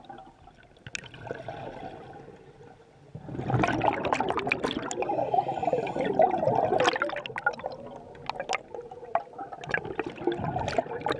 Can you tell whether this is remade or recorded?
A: recorded